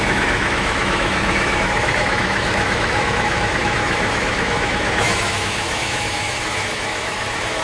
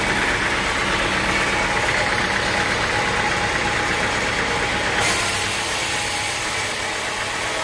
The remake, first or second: first